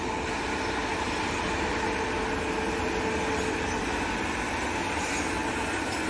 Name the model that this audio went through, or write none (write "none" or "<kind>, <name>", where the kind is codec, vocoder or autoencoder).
none